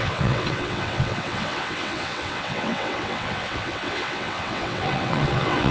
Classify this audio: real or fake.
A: fake